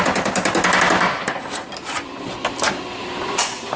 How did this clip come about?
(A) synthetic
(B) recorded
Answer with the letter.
A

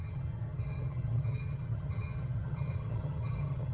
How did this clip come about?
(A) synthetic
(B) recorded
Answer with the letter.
A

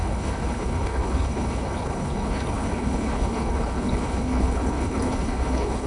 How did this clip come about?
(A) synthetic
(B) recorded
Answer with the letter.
A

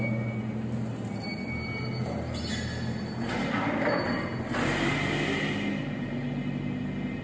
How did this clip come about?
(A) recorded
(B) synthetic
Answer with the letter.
A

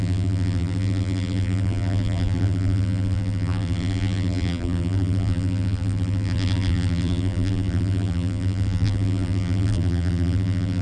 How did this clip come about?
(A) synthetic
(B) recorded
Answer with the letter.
A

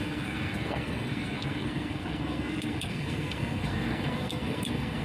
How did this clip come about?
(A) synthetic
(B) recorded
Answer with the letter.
A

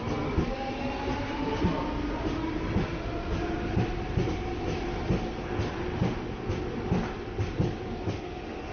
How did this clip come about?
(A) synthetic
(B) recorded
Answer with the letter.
B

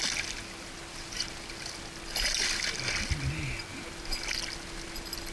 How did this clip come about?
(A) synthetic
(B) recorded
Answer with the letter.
B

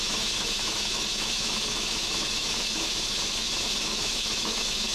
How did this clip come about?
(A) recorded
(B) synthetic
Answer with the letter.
B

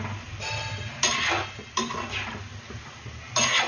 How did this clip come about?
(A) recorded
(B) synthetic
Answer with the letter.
A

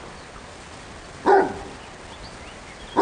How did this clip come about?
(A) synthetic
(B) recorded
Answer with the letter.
B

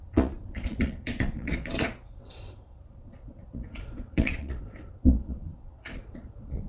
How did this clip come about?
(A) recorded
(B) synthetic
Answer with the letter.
B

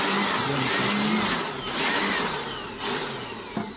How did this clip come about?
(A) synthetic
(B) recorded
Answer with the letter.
B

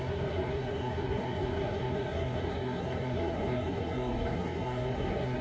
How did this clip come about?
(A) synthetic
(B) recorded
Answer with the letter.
A